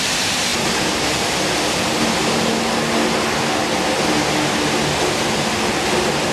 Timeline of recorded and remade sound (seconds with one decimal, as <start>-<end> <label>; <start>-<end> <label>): 0.0-6.3 recorded